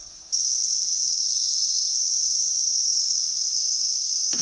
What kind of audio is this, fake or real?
fake